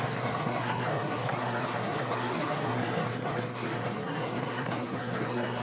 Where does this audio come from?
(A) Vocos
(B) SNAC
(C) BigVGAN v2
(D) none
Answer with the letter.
B